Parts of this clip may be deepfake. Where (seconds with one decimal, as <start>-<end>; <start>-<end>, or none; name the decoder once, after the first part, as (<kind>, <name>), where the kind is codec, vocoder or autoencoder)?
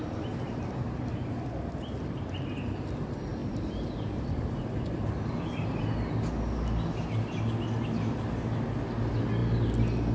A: 3.4-5.7 (vocoder, BigVGAN v2)